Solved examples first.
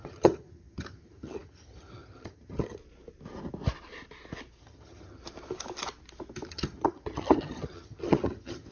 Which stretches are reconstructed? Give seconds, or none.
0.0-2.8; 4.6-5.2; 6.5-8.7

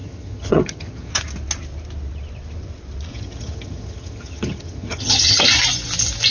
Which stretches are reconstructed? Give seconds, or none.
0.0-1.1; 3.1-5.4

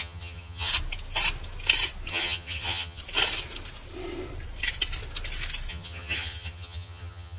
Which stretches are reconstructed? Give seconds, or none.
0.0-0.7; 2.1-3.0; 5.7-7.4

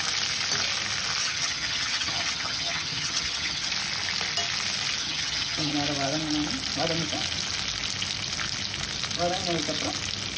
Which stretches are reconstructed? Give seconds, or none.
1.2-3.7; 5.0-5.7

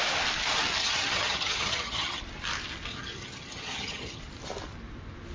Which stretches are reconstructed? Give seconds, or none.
0.8-2.2; 2.9-4.2

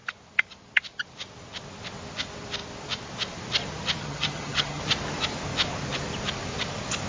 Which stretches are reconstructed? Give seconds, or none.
4.0-4.8